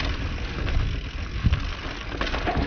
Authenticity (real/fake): real